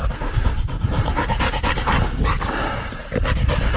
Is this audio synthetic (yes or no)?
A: no